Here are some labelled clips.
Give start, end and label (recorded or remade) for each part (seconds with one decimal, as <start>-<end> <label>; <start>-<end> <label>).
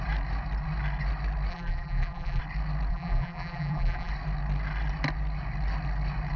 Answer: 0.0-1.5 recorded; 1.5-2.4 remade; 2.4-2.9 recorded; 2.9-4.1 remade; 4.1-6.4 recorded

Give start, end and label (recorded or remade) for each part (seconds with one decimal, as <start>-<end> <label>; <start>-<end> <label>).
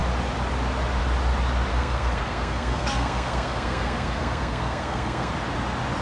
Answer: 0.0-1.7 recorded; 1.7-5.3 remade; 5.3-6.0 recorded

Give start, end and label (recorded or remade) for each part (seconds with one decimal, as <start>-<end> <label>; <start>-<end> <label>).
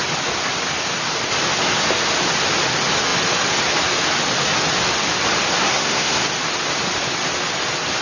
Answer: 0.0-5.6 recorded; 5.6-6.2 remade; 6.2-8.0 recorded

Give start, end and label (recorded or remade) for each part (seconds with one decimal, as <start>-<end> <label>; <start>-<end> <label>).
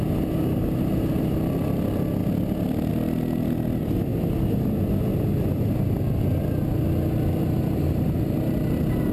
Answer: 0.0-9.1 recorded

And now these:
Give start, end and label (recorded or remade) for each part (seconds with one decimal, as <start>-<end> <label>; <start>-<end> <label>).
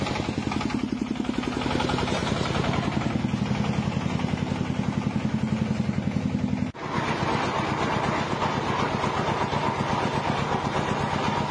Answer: 0.0-11.5 recorded